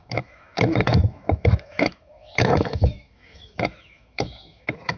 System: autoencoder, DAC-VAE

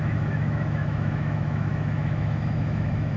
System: autoencoder, DAC-VAE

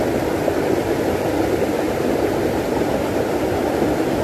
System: none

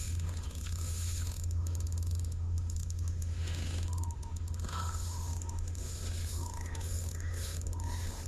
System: autoencoder, DAC-VAE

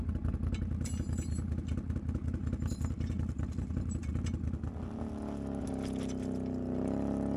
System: none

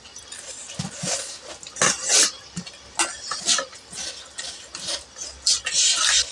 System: none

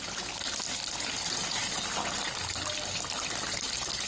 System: none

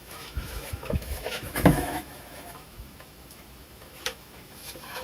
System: autoencoder, DAC-VAE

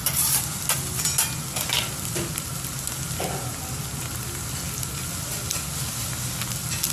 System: none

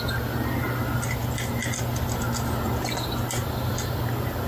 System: none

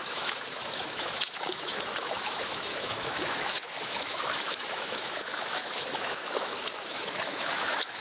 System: autoencoder, DAC-VAE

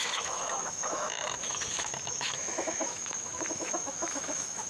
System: autoencoder, DAC-VAE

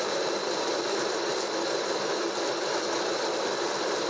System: none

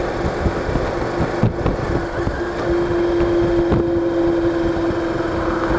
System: none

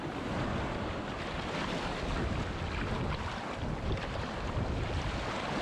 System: none